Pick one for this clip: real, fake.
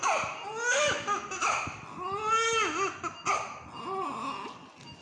real